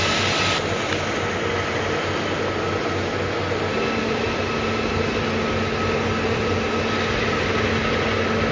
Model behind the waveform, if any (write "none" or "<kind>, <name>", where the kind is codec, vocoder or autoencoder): none